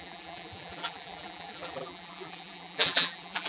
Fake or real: fake